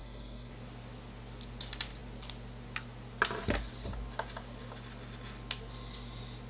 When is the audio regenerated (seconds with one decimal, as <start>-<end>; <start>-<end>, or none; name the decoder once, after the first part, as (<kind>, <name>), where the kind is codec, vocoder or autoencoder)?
0.0-0.5 (codec, SNAC)